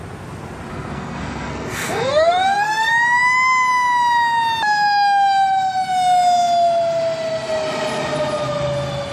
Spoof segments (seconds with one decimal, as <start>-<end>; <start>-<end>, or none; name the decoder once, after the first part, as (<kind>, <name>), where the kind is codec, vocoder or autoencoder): 0.7-2.9 (codec, SNAC)